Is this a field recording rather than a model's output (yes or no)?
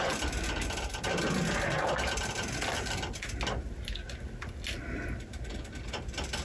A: yes